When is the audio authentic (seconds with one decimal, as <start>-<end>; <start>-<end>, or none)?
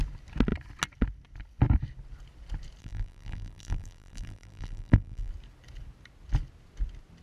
0.0-2.8; 5.3-7.2